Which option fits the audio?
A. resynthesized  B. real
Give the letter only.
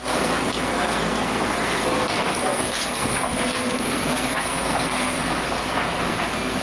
A